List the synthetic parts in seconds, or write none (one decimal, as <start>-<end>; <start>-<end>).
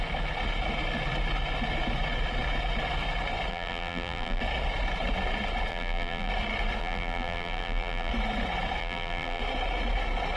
3.5-4.4; 5.7-6.3; 6.8-8.1; 8.8-9.4